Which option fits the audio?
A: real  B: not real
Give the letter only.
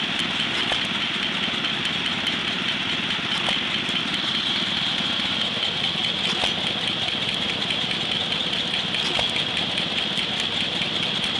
A